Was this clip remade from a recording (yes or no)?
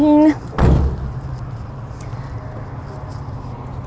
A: no